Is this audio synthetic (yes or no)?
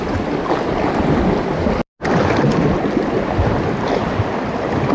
no